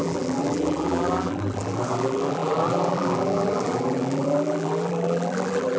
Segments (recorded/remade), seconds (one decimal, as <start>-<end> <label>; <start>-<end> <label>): 0.0-5.8 remade